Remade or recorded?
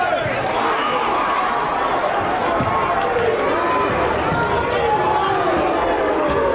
recorded